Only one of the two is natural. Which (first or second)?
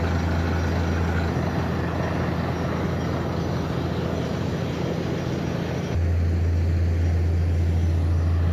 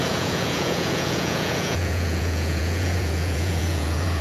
first